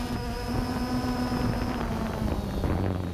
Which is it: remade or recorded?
recorded